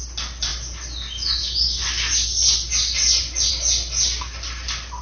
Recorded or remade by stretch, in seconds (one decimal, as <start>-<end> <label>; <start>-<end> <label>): 0.0-5.0 recorded